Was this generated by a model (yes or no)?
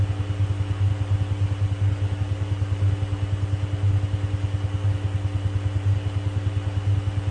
no